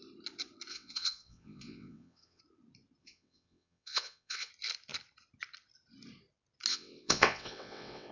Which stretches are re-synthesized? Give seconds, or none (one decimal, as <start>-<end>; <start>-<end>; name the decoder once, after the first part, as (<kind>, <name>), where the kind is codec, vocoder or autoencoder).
0.7-2.4 (vocoder, WaveNeXt); 3.0-4.5; 6.7-8.1